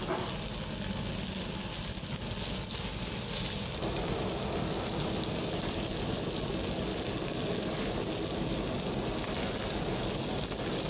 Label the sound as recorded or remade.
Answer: recorded